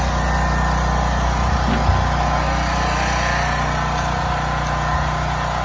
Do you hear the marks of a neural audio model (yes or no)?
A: no